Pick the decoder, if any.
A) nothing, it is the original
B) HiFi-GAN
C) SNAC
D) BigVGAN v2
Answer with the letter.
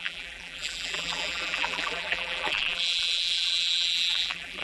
D